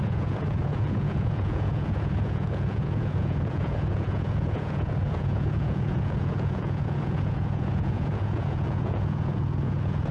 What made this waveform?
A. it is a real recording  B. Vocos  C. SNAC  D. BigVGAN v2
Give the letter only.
B